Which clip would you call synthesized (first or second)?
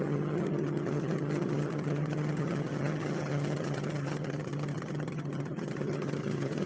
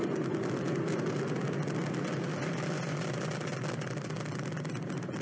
first